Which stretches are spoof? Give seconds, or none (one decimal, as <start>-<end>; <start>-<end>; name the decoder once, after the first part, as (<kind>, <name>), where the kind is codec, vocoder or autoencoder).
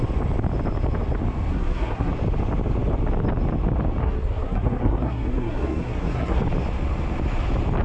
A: 1.5-2.1 (codec, SNAC); 4.0-6.4